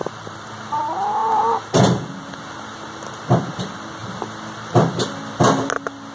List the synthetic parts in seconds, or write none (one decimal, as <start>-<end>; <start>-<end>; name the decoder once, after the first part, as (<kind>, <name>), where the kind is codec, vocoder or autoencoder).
0.0-0.5 (vocoder, BigVGAN v2)